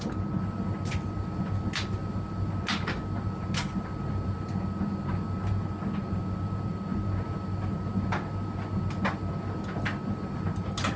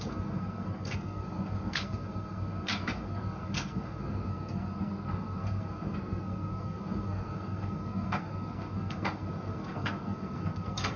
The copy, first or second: second